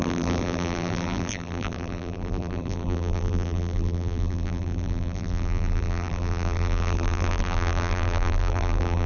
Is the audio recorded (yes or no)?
no